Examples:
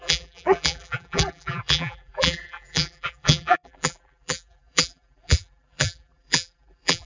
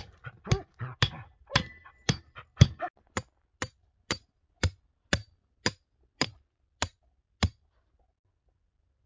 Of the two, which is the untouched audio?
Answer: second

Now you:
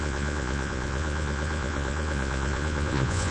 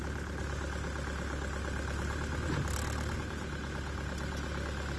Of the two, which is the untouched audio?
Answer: second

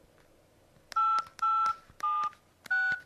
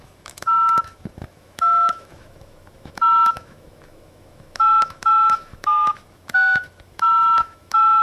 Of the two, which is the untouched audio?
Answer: first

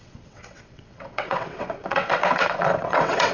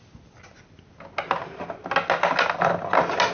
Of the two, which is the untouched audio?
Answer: second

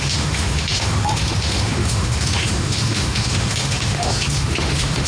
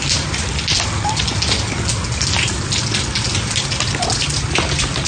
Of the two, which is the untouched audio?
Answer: second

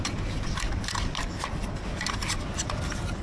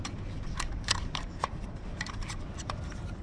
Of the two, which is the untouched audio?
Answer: first